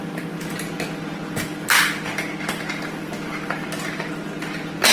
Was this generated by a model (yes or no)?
no